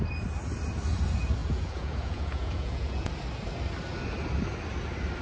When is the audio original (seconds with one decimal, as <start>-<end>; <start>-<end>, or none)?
0.0-1.4; 3.1-5.2